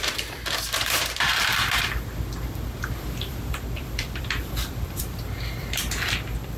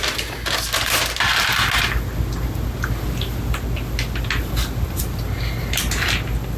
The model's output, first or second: first